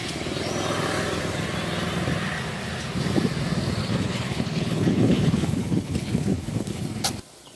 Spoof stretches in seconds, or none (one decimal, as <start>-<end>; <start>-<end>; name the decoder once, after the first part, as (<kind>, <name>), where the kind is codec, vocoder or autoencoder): 3.8-6.8 (codec, HILCodec)